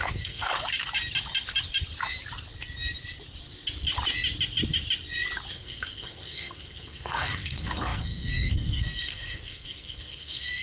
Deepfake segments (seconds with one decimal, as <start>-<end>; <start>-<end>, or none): 0.0-0.5; 5.5-10.6